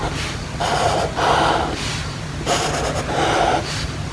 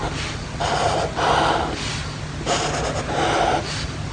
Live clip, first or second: second